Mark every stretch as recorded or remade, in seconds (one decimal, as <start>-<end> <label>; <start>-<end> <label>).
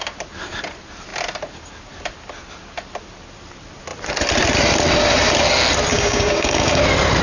0.0-5.9 recorded; 5.9-6.8 remade; 6.8-7.2 recorded